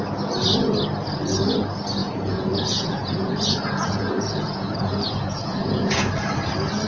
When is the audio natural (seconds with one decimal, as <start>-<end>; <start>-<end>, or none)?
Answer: 0.0-2.0; 6.1-6.9